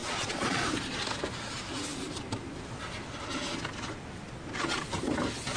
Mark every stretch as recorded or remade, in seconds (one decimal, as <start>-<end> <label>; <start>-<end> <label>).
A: 0.0-0.7 remade; 0.7-5.6 recorded